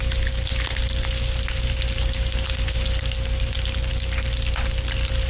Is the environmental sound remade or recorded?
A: recorded